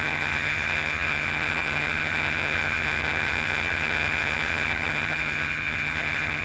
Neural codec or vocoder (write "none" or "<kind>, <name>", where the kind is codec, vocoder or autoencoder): vocoder, HiFi-GAN